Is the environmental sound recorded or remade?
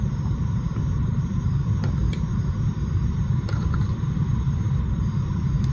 remade